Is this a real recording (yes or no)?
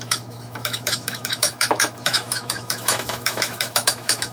no